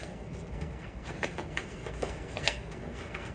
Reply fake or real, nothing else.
fake